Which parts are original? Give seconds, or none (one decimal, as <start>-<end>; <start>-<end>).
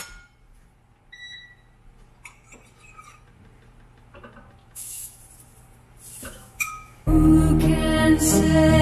0.0-4.6; 5.2-6.2; 7.1-8.8